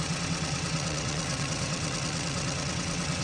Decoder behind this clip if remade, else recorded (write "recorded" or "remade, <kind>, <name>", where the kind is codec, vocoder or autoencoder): remade, vocoder, WaveNeXt